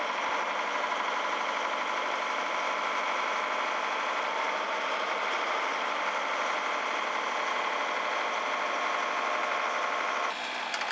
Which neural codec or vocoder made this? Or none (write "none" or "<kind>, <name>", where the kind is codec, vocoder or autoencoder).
none